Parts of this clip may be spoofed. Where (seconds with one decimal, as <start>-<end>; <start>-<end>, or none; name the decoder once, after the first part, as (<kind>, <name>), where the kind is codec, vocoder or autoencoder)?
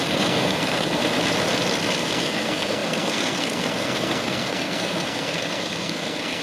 0.0-1.0 (codec, SNAC); 2.0-6.4